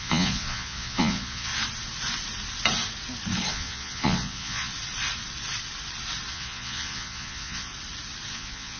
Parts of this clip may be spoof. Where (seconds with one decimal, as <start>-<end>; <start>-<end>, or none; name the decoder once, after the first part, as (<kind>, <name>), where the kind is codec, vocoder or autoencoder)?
0.0-1.5 (vocoder, Vocos); 3.5-4.7; 6.3-7.7; 8.3-8.8